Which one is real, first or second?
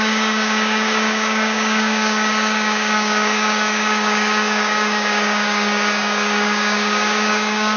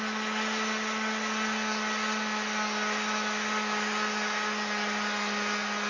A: second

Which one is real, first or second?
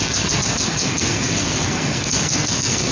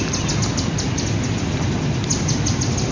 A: second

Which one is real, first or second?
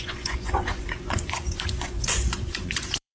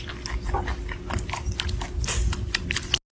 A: second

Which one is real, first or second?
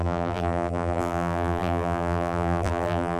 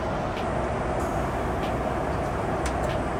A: second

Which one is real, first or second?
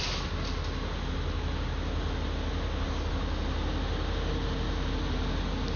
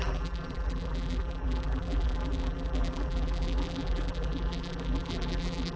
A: first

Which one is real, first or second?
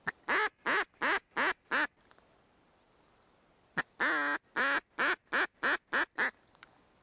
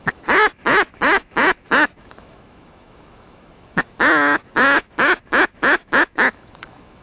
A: first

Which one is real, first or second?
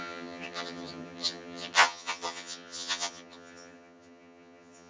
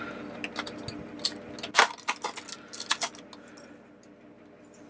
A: second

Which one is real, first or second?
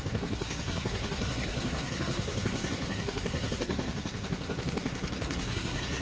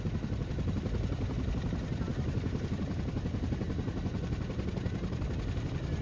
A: second